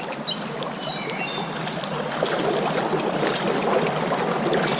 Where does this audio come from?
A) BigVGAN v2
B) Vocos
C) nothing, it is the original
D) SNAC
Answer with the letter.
C